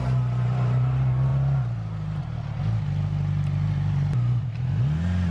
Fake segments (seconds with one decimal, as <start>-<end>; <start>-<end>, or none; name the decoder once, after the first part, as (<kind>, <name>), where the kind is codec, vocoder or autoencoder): none